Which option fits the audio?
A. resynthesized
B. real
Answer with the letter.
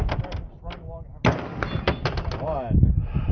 B